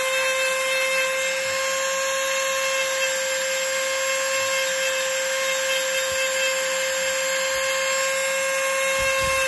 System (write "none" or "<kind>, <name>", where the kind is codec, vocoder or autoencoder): none